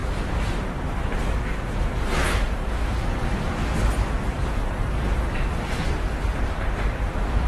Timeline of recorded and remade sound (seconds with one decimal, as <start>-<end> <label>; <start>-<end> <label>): 0.0-7.5 remade